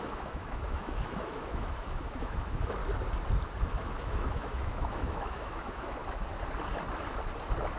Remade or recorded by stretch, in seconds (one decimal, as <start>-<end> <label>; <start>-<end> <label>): 0.0-2.8 remade; 2.8-3.6 recorded; 3.6-6.0 remade; 6.0-7.8 recorded